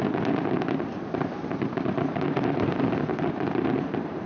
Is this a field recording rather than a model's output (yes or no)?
yes